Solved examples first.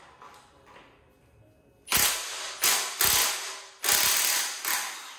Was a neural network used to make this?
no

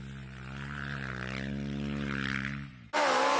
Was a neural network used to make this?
no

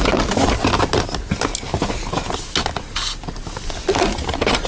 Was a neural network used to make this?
no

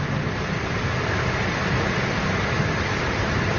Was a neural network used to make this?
yes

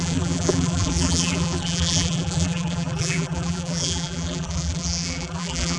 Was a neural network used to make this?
yes